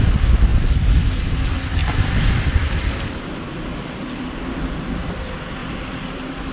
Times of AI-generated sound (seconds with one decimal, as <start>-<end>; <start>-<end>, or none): 0.5-1.3; 1.8-2.6; 5.6-6.5